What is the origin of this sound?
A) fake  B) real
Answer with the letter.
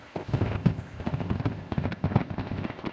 A